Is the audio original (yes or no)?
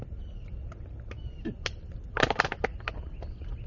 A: yes